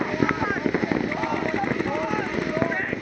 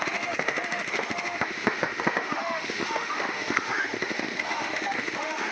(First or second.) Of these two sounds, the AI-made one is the second